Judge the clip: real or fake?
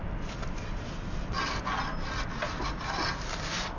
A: real